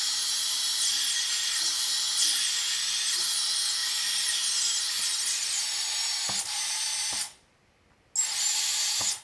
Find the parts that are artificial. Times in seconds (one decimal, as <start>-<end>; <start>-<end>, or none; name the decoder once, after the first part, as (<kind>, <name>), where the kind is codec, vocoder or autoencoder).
none